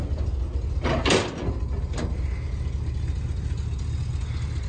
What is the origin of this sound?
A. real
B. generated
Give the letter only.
A